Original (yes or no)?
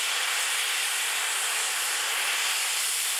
no